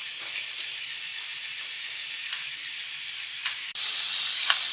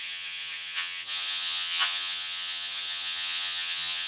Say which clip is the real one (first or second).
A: first